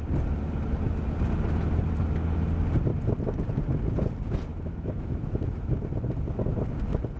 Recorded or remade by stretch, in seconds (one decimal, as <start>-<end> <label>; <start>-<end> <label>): 0.0-4.5 recorded; 4.5-5.7 remade; 5.7-7.2 recorded